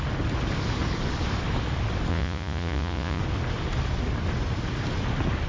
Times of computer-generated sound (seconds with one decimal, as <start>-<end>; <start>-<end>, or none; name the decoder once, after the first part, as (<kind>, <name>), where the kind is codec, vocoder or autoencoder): 2.1-3.2 (vocoder, Vocos)